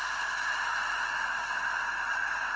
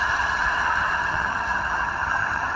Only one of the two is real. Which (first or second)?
first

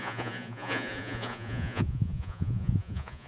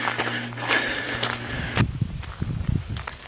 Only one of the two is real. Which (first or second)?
second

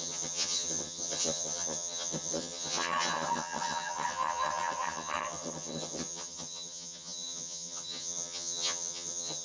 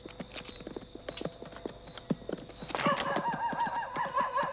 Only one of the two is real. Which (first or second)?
second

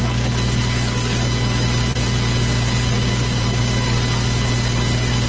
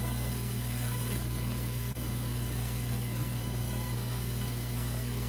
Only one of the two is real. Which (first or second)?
first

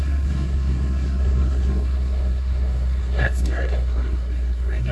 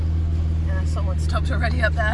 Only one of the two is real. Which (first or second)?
second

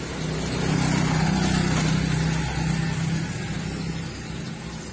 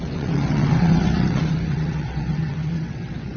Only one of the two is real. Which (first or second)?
first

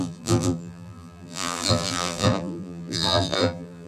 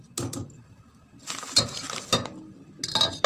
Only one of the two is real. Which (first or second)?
second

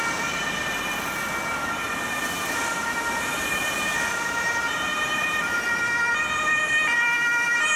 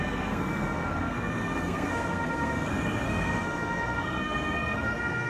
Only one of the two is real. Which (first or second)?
first